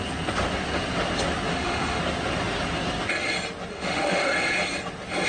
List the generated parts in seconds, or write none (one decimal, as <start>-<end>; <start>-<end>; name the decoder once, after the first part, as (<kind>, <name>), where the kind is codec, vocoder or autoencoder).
1.5-2.0 (autoencoder, DAC-VAE); 3.7-4.3